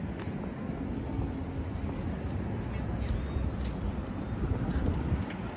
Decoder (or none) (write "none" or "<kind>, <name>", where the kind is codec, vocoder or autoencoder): none